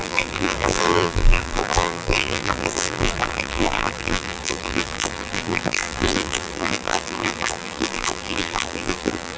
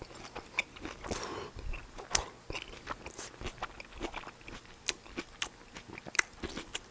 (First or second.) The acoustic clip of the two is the second